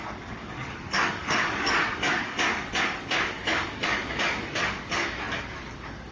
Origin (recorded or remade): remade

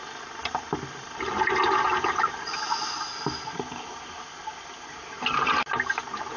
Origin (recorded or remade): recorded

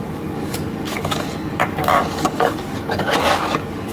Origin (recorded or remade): remade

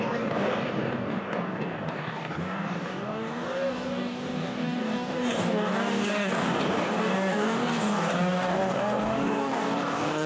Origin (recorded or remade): remade